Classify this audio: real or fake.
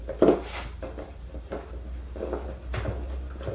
fake